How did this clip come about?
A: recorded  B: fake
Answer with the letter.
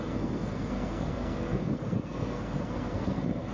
B